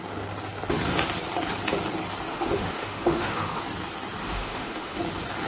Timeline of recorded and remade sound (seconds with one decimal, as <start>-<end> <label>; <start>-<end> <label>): 0.0-2.3 recorded; 2.3-3.6 remade; 3.6-4.2 recorded; 4.2-5.0 remade; 5.0-5.5 recorded